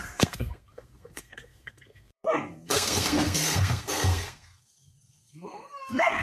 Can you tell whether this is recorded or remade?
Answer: remade